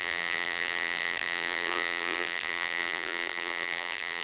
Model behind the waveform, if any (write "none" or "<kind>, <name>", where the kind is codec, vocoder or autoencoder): vocoder, BigVGAN v2